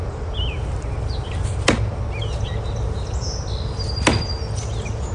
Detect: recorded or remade recorded